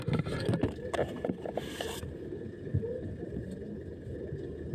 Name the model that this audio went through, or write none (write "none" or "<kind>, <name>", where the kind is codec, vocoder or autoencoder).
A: none